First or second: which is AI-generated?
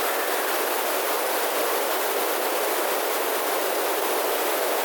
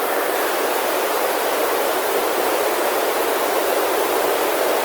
second